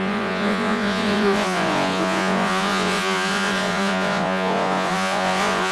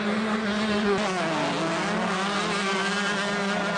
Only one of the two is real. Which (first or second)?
second